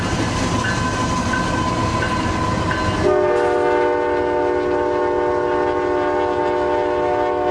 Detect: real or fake real